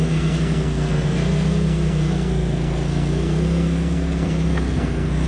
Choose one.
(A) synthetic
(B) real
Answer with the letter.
A